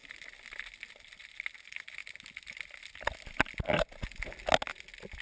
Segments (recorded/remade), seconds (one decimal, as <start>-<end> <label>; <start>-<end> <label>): 0.0-5.2 recorded